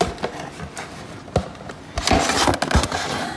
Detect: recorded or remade recorded